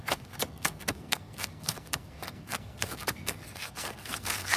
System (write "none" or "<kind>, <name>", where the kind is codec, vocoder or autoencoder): codec, SNAC